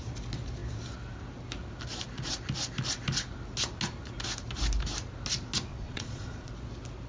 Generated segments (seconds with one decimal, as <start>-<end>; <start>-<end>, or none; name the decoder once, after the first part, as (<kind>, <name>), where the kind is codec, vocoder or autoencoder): 5.7-6.5 (vocoder, Vocos)